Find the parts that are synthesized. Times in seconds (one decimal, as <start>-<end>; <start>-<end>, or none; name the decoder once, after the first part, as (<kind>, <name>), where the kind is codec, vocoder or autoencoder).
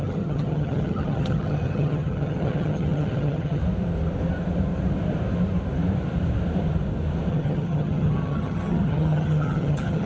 0.0-3.6 (vocoder, HiFi-GAN); 7.3-10.1